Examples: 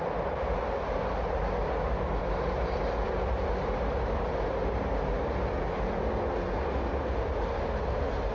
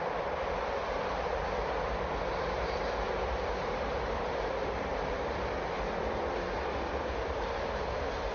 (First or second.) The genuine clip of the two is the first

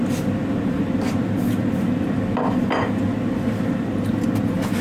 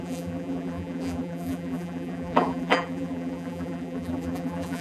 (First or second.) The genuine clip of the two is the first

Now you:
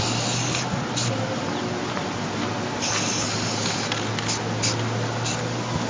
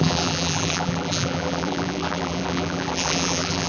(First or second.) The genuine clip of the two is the first